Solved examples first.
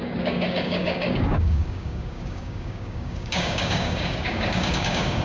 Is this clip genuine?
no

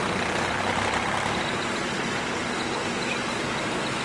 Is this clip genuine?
yes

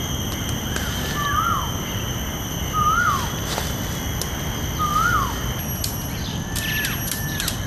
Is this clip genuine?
yes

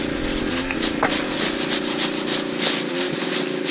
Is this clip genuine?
yes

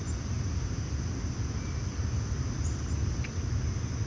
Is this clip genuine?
yes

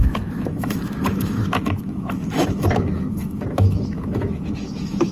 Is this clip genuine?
no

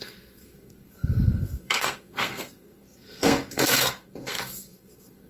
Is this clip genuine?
no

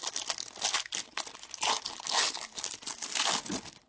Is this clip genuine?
yes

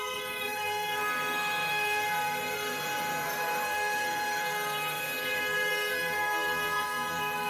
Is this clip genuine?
no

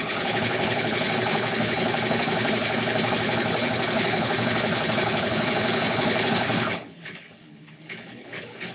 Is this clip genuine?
no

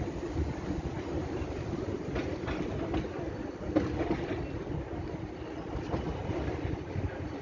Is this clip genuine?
yes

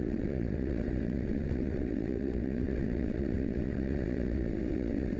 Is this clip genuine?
no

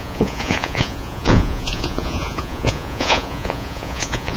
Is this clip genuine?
no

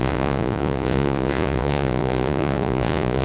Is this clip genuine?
no